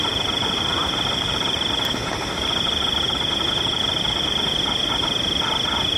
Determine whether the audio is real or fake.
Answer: fake